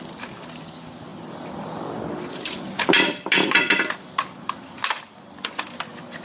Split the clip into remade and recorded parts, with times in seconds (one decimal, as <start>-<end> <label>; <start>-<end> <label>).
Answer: 0.0-6.2 recorded